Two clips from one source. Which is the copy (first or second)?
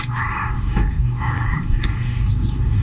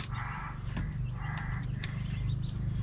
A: first